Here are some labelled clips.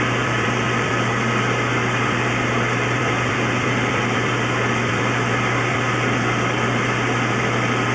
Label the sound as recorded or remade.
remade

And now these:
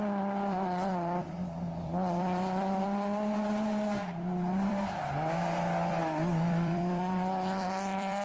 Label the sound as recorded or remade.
remade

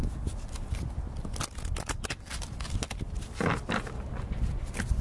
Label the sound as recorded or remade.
recorded